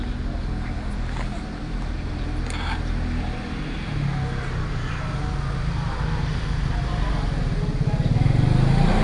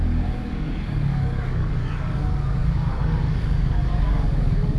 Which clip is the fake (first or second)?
second